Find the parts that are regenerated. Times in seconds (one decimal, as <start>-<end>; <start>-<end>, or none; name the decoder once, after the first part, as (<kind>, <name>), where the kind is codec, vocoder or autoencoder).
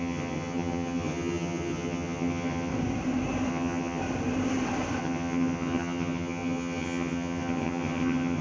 0.0-2.7 (vocoder, HiFi-GAN); 3.5-4.0; 5.0-8.4